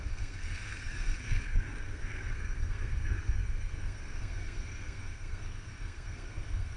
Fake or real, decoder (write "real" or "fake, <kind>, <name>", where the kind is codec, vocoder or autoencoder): fake, codec, SNAC